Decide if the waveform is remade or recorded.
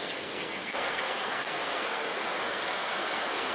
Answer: remade